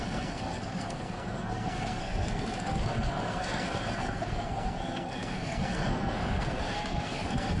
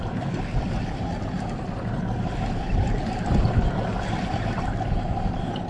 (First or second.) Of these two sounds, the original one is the second